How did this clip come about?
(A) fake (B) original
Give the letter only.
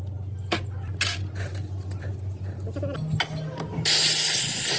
B